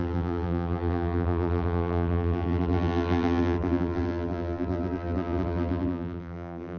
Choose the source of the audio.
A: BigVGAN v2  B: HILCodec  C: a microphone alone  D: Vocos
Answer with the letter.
A